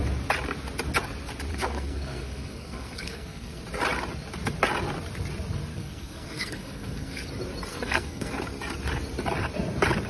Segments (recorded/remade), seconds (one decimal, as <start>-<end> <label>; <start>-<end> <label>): 0.0-1.5 recorded; 1.5-3.6 remade; 3.6-5.7 recorded; 5.7-7.3 remade; 7.3-7.7 recorded; 7.7-8.3 remade; 8.3-10.1 recorded

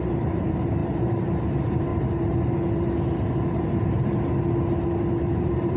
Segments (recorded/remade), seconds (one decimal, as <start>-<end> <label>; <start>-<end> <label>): 0.0-0.8 remade; 0.8-1.5 recorded; 1.5-1.9 remade; 1.9-5.2 recorded; 5.2-5.8 remade

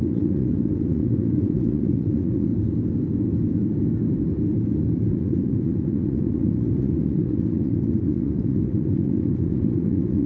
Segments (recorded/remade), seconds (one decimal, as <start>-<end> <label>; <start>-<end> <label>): 0.0-2.5 remade; 2.5-5.1 recorded; 5.1-10.3 remade

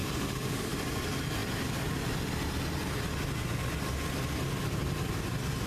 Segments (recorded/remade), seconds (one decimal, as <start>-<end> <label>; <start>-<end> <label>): 0.0-0.7 remade; 0.7-5.7 recorded

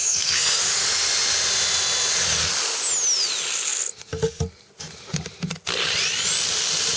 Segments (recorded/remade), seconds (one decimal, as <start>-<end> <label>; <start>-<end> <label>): 0.0-0.6 remade; 0.6-7.0 recorded